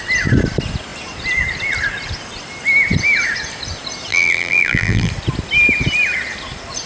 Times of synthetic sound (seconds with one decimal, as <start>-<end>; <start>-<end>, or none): 4.1-5.1